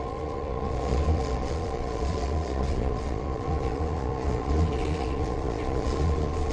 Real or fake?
fake